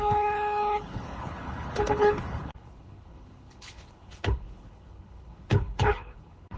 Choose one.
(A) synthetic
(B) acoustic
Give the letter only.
A